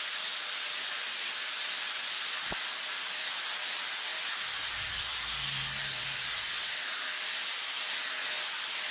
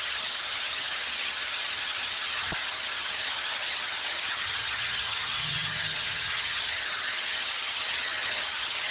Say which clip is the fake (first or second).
second